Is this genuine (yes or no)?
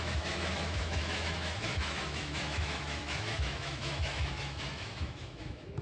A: no